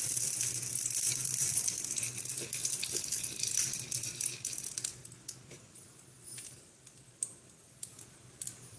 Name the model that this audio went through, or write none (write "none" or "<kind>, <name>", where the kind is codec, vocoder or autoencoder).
none